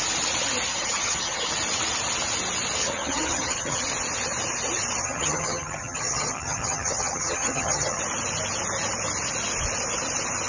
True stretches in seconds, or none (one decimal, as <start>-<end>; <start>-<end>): 0.0-0.7; 1.5-2.8; 3.8-5.0; 8.0-10.5